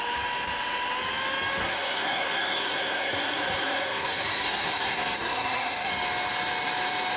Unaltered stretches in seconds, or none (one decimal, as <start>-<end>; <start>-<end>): 0.0-1.6; 5.9-7.2